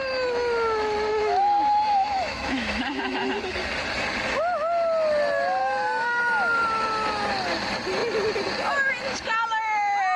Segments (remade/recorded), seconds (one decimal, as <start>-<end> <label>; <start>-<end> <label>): 0.0-1.1 recorded; 1.1-3.4 remade; 3.4-5.6 recorded; 5.6-6.2 remade; 6.2-10.2 recorded